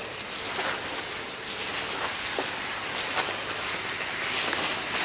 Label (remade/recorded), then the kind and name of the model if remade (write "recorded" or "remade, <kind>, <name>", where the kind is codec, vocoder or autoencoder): recorded